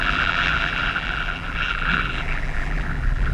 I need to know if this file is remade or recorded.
remade